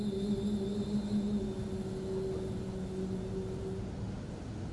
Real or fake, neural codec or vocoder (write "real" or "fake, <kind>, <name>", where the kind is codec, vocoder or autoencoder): real